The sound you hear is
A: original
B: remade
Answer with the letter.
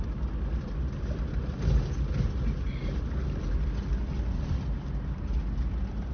A